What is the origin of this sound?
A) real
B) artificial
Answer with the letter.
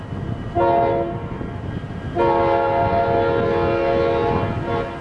A